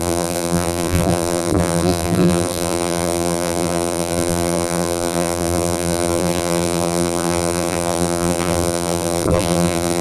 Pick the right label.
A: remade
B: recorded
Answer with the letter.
A